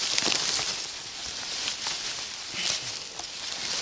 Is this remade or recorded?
recorded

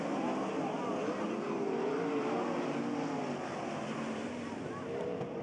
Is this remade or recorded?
recorded